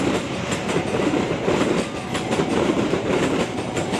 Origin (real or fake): fake